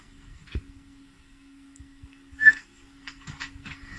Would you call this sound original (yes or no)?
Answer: no